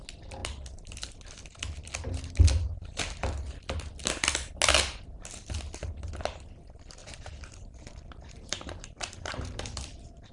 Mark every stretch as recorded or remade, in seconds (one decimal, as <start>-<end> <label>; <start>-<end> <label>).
0.0-7.0 recorded; 7.0-10.3 remade